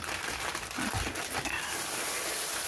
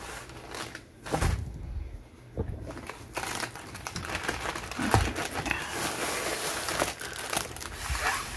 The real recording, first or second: second